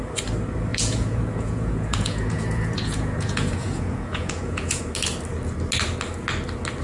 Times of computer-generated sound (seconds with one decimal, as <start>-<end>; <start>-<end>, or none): 0.7-4.8